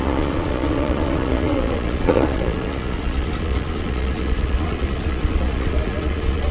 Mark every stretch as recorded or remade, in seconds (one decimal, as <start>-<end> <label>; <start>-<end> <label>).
0.0-6.5 remade